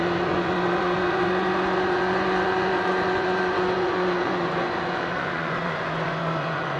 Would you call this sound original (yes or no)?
no